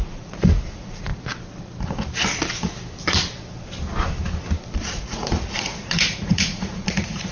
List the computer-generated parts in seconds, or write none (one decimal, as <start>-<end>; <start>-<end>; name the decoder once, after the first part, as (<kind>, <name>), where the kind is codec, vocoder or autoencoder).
0.0-1.1 (vocoder, Vocos); 5.0-7.3